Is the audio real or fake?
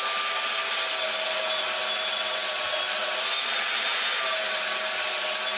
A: real